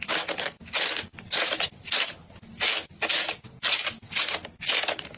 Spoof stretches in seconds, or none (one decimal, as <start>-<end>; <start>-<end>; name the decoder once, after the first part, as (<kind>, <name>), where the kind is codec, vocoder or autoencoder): none